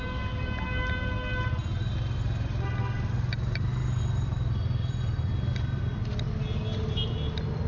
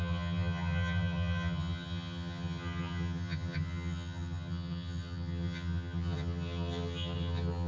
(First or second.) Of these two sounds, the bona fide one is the first